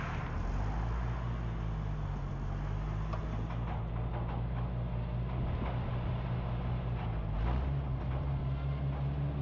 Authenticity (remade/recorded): recorded